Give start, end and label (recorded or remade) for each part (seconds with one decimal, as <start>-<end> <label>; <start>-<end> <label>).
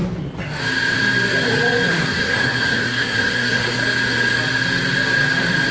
0.0-1.9 recorded; 1.9-3.8 remade; 3.8-5.7 recorded